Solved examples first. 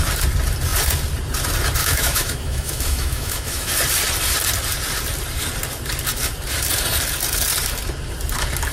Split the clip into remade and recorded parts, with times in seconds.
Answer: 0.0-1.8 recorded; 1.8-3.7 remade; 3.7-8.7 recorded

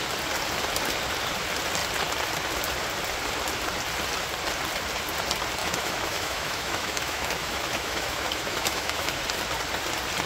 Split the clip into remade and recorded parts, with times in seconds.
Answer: 0.0-5.6 recorded; 5.6-9.2 remade; 9.2-10.3 recorded

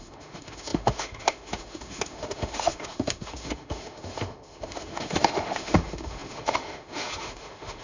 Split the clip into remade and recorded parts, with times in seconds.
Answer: 0.0-7.8 remade